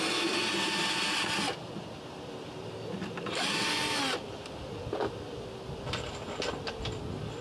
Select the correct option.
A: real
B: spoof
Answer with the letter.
A